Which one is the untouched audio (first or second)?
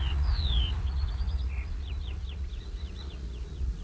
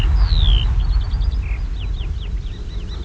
second